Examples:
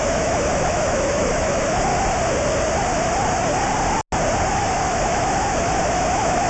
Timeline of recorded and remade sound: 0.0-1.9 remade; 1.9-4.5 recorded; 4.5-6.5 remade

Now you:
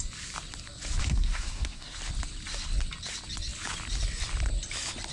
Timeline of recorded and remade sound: 0.0-1.0 recorded; 1.0-2.0 remade; 2.0-5.1 recorded

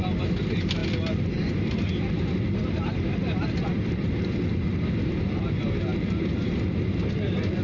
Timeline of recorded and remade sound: 0.0-7.6 recorded

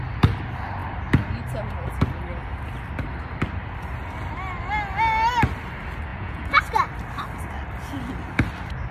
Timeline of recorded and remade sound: 0.0-6.1 recorded; 6.1-6.6 remade; 6.6-8.9 recorded

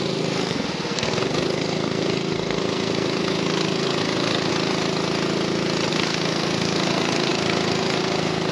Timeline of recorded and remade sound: 0.0-4.5 remade; 4.5-5.9 recorded; 5.9-8.5 remade

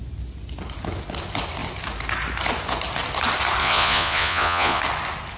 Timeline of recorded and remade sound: 0.0-3.6 recorded; 3.6-4.8 remade; 4.8-5.4 recorded

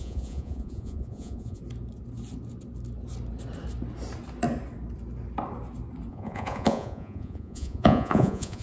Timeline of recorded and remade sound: 0.0-1.6 remade; 1.6-6.1 recorded; 6.1-8.6 remade